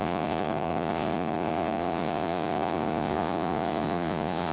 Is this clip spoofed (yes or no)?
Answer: yes